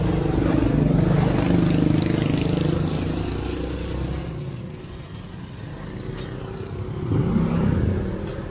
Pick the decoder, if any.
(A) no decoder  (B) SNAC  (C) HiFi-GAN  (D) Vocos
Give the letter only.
A